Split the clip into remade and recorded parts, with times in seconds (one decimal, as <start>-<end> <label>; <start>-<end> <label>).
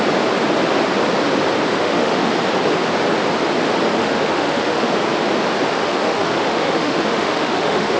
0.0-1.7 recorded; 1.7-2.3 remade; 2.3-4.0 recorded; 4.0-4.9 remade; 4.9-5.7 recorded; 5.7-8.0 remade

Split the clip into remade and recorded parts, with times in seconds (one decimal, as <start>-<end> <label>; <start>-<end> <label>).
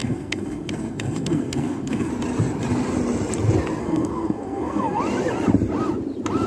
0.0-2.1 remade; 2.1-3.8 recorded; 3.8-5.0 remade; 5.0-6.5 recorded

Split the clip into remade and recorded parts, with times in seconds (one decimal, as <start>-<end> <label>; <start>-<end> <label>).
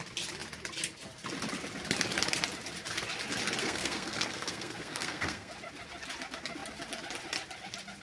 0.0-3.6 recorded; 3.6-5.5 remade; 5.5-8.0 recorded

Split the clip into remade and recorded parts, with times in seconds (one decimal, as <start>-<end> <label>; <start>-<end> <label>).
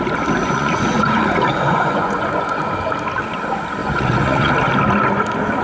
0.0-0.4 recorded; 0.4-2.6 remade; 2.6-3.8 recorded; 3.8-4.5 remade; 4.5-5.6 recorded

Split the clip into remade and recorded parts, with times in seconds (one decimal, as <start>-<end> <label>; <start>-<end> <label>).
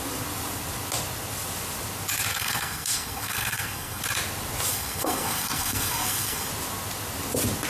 0.0-2.3 recorded; 2.3-4.0 remade; 4.0-4.7 recorded; 4.7-6.5 remade; 6.5-7.7 recorded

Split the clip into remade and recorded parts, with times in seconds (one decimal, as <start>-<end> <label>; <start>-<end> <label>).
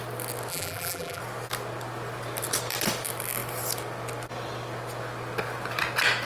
0.0-0.5 recorded; 0.5-1.2 remade; 1.2-6.2 recorded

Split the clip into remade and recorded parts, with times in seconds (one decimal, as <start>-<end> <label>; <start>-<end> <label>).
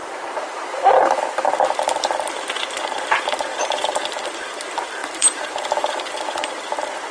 0.0-1.2 remade; 1.2-3.5 recorded; 3.5-4.2 remade; 4.2-5.0 recorded; 5.0-6.1 remade; 6.1-7.1 recorded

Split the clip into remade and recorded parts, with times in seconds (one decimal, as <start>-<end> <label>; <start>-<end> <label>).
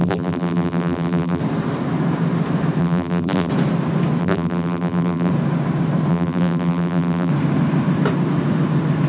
0.0-1.4 remade; 1.4-2.8 recorded; 2.8-3.5 remade; 3.5-4.2 recorded; 4.2-5.3 remade; 5.3-6.1 recorded; 6.1-7.3 remade; 7.3-9.1 recorded